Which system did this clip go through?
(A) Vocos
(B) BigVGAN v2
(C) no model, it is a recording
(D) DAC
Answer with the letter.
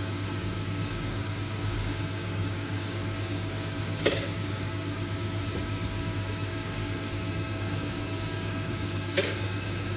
D